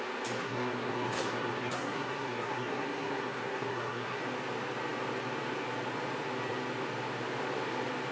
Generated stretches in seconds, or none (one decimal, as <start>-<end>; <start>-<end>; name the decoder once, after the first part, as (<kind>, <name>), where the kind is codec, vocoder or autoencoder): 0.4-4.2 (codec, SNAC)